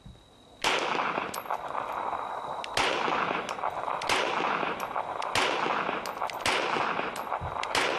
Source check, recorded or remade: recorded